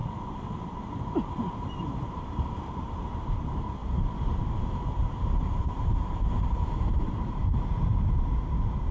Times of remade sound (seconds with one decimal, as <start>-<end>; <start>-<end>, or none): 0.0-7.9